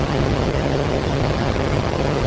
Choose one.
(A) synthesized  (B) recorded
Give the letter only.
A